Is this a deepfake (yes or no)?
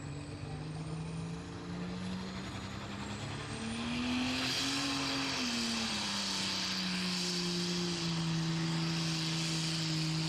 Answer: no